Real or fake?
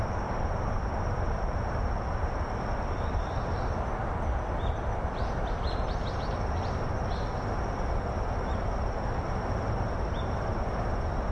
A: real